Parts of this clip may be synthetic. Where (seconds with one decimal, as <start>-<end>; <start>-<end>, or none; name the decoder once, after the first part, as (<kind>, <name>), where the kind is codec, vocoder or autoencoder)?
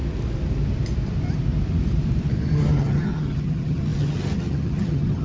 2.8-5.2 (vocoder, HiFi-GAN)